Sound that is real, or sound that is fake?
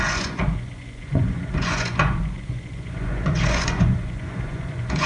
fake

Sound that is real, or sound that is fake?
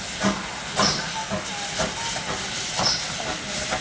real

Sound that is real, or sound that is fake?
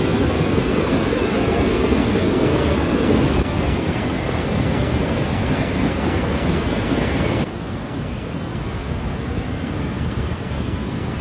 fake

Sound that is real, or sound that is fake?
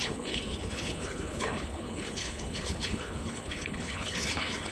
fake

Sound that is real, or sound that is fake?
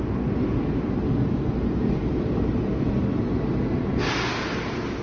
real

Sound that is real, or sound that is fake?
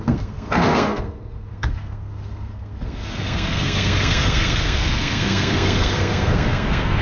fake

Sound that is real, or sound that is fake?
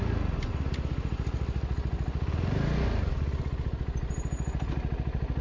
real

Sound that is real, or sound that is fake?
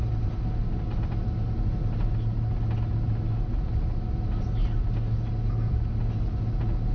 real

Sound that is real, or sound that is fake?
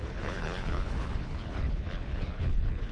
fake